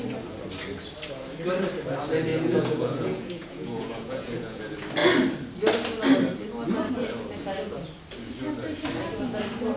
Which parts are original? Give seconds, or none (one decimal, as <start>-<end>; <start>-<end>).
0.0-2.3; 4.6-9.8